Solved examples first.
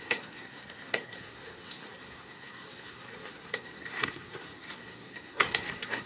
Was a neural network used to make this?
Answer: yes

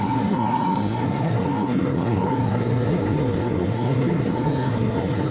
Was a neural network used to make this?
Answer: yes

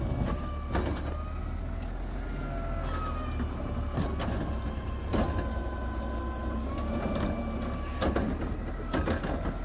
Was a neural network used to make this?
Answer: no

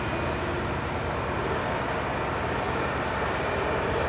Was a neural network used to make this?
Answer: no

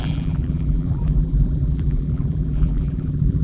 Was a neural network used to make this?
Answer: yes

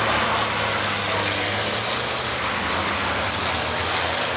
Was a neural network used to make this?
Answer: no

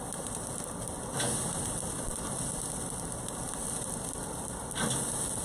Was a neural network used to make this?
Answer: no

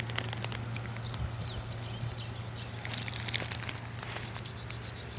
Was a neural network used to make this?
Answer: no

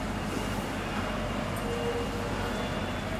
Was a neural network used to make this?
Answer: no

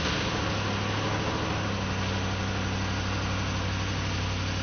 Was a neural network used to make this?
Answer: no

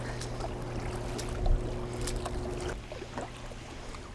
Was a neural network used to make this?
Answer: no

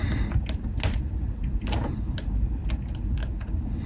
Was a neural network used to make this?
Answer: no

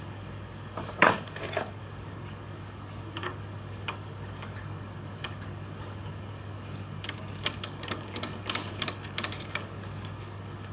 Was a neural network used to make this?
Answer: yes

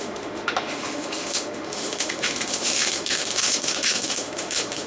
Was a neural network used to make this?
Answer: yes